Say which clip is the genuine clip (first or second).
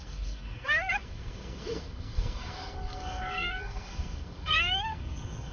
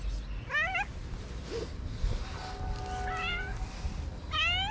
second